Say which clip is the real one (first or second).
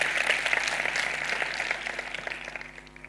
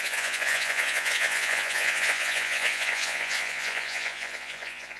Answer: first